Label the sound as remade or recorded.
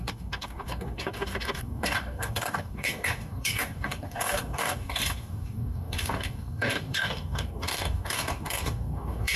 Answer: remade